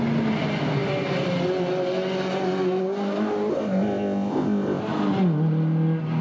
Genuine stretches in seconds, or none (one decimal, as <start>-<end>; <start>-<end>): 0.0-3.5; 4.8-6.2